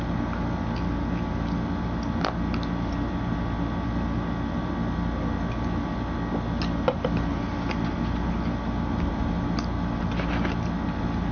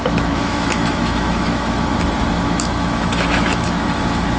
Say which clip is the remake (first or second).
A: second